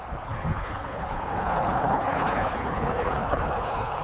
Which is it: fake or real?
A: fake